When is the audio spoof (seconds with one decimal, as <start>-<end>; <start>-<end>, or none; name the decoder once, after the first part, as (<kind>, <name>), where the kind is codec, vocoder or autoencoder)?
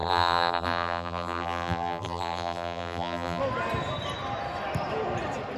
0.0-3.4 (vocoder, BigVGAN v2)